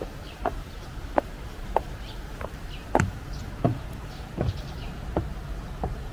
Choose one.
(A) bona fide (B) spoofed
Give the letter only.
B